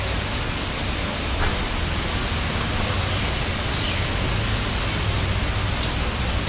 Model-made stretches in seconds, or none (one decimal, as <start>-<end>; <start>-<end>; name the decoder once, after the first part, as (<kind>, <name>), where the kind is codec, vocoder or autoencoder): none